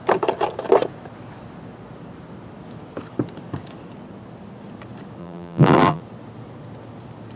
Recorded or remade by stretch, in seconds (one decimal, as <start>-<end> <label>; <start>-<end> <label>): 0.0-5.2 recorded; 5.2-6.0 remade; 6.0-7.4 recorded